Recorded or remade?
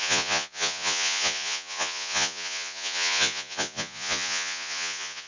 remade